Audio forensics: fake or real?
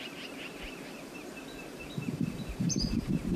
fake